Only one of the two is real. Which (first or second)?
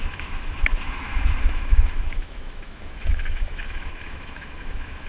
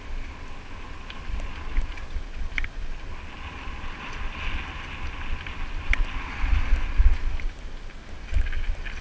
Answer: second